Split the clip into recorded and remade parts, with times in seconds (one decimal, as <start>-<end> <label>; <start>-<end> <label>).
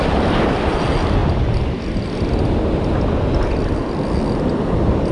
0.0-5.1 recorded